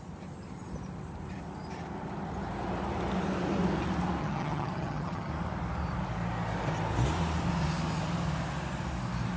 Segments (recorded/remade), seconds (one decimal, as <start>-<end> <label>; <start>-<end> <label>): 0.0-4.2 recorded; 4.2-5.3 remade; 5.3-9.4 recorded